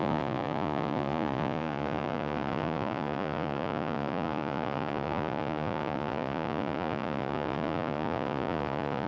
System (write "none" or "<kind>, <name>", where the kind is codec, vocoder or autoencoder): vocoder, Vocos